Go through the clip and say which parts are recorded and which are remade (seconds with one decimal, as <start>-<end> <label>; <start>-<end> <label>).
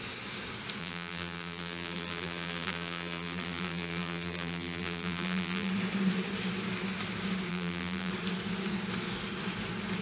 0.0-0.8 recorded; 0.8-5.7 remade; 5.7-7.5 recorded; 7.5-8.1 remade; 8.1-10.0 recorded